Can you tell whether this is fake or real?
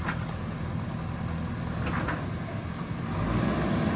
real